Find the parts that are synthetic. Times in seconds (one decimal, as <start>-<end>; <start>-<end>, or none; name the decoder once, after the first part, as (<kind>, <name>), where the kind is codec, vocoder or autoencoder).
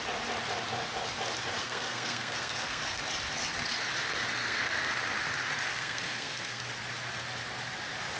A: 1.6-3.0 (codec, SNAC); 4.4-4.9; 5.7-6.6